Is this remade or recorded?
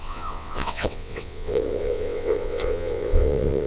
remade